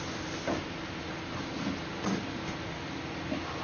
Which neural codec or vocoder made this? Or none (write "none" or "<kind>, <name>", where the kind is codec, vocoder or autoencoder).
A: none